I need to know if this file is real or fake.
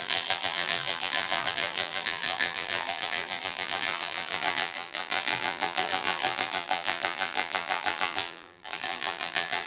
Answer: fake